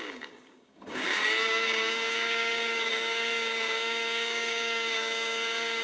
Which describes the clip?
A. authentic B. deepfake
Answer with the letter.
B